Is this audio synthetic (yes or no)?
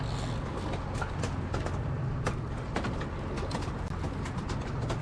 no